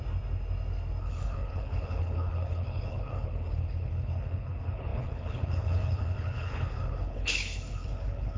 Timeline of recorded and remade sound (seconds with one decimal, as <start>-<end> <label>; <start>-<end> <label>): 0.0-1.0 recorded; 1.0-8.4 remade